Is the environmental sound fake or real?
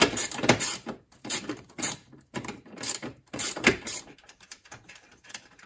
fake